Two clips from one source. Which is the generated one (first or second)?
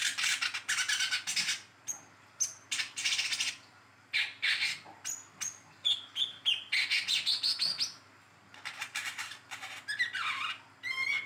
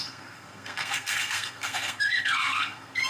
second